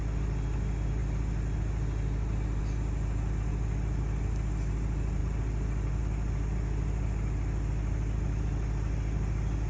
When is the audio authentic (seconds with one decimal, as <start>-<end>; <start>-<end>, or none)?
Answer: 0.0-9.7